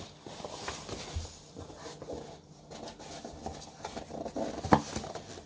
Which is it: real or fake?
real